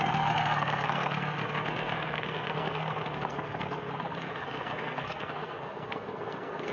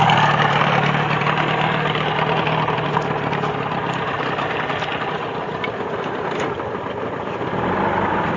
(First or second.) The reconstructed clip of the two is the first